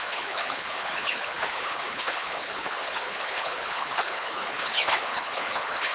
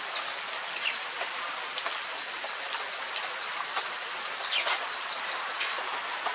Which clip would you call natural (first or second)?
second